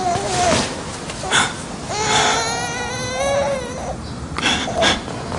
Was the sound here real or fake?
real